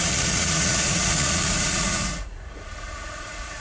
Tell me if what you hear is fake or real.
fake